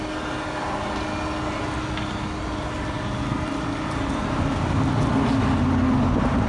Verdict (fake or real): real